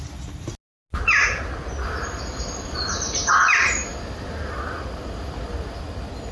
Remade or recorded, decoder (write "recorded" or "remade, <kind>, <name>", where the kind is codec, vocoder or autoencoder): recorded